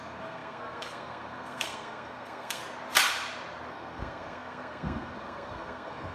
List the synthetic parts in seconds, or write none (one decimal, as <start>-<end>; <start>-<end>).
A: 0.0-2.6; 3.7-6.1